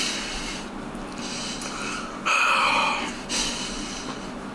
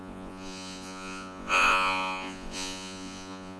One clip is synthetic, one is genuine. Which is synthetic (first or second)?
second